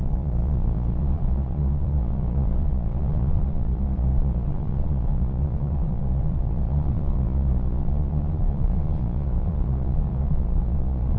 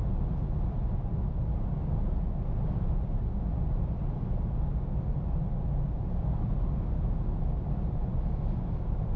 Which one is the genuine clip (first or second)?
second